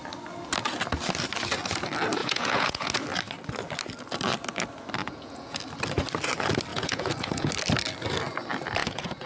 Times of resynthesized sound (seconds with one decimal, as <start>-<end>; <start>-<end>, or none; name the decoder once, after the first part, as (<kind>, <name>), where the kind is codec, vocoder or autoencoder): 2.2-2.9 (vocoder, Vocos); 5.0-5.6; 6.7-7.5; 8.8-9.3